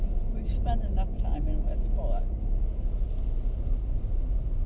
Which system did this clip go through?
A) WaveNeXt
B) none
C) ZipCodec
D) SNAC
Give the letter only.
B